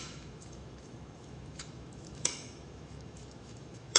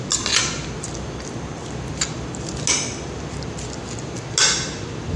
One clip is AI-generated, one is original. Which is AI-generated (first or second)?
first